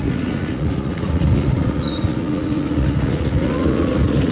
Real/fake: fake